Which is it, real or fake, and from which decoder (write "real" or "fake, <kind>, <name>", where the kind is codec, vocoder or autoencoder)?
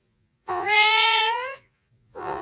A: fake, vocoder, Vocos